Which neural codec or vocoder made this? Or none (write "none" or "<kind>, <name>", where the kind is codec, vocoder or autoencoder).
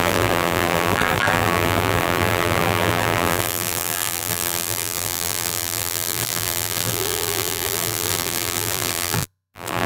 vocoder, BigVGAN v2